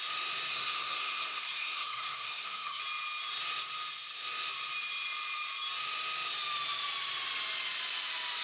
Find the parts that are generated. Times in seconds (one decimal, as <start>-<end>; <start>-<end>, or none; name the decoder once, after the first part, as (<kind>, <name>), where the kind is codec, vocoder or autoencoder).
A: 0.5-2.8 (codec, SNAC)